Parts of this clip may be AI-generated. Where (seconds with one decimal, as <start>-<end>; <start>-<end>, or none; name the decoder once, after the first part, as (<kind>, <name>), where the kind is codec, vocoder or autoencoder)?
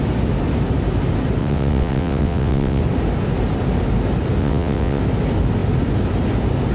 1.4-2.8 (vocoder, WaveNeXt); 4.4-5.0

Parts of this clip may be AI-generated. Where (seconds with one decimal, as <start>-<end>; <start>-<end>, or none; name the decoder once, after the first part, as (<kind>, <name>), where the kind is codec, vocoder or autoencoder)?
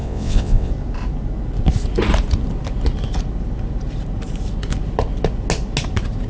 0.0-0.7 (vocoder, WaveNeXt)